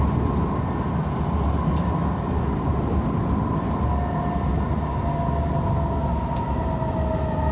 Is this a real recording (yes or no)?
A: yes